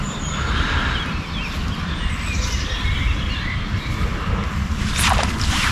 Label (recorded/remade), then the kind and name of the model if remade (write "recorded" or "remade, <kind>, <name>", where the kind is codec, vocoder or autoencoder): recorded